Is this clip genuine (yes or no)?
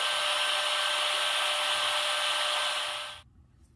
yes